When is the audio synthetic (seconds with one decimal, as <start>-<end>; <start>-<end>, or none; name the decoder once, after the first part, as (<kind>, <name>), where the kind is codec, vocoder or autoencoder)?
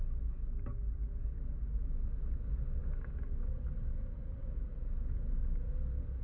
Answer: none